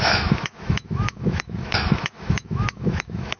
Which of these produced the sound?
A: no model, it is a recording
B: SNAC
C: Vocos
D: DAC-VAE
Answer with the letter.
D